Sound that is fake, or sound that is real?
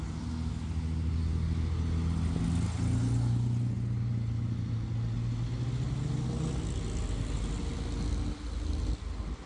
real